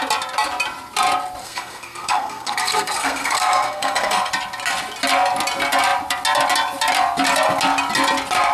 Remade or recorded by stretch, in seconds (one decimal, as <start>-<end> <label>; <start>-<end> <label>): 0.0-1.4 recorded; 1.4-4.3 remade; 4.3-8.5 recorded